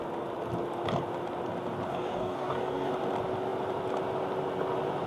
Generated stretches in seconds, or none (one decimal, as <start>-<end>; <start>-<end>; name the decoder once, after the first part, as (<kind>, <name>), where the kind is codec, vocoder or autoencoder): 1.9-2.9 (codec, DAC)